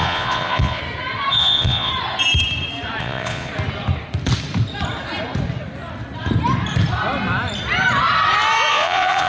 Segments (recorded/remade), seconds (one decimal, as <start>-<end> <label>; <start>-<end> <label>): 0.0-0.8 remade; 0.8-1.3 recorded; 1.3-1.9 remade; 1.9-3.0 recorded; 3.0-3.5 remade; 3.5-8.7 recorded; 8.7-9.3 remade